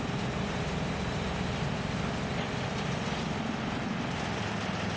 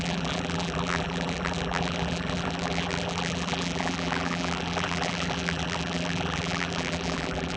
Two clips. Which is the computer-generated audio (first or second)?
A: second